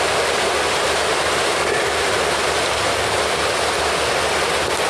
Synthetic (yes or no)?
no